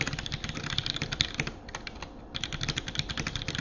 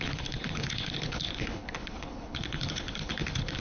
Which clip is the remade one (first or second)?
second